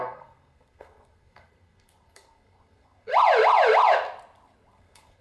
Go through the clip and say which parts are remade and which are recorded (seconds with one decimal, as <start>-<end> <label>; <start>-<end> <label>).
0.0-3.1 remade; 3.1-4.7 recorded; 4.7-5.2 remade